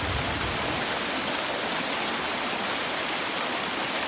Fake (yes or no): no